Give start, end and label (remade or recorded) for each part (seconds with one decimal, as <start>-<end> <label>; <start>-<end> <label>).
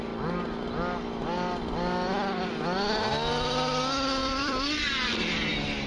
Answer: 0.0-4.2 recorded; 4.2-5.5 remade; 5.5-5.9 recorded